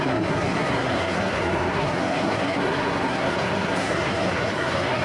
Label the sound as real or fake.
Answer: fake